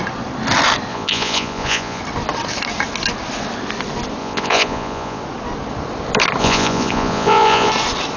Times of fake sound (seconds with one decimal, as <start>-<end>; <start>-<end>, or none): 0.9-2.0; 4.2-5.2; 6.4-7.7

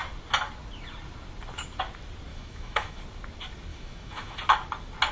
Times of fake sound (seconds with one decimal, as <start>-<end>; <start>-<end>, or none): 2.3-3.0; 3.7-4.4

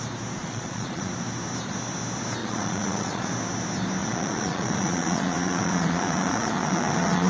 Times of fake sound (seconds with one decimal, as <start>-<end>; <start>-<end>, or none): 0.4-1.1; 2.4-3.3; 4.0-7.3

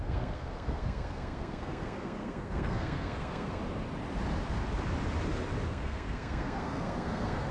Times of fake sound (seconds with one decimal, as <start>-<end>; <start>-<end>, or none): 0.0-3.6; 5.7-7.5

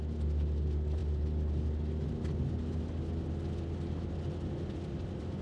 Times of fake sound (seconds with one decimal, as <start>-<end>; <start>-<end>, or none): none